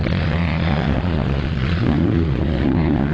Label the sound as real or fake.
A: fake